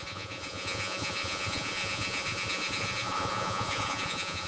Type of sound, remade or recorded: remade